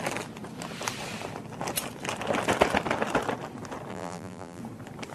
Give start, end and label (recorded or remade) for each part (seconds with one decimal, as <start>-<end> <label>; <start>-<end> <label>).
0.0-3.9 recorded; 3.9-4.6 remade; 4.6-5.1 recorded